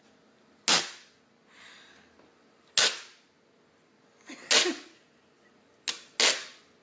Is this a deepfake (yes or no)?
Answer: no